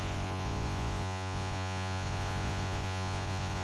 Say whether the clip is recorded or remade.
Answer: remade